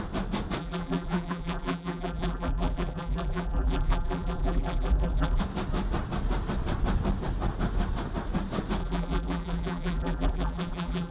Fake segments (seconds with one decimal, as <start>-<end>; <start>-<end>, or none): 0.6-5.4; 8.8-11.1